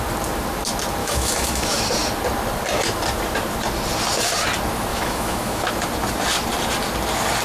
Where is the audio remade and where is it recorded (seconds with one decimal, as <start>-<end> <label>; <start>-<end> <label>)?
0.0-1.0 recorded; 1.0-1.8 remade; 1.8-4.9 recorded; 4.9-5.7 remade; 5.7-7.4 recorded